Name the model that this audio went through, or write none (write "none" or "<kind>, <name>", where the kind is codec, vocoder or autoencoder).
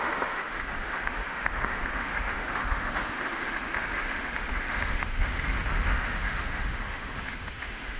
autoencoder, DAC-VAE